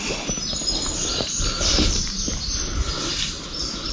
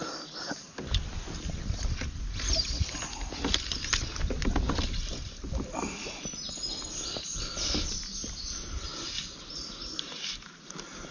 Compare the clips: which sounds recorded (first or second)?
second